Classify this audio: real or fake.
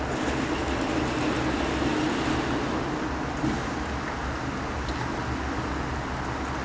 real